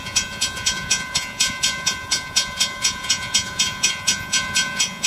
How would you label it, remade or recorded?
remade